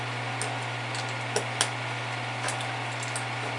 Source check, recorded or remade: recorded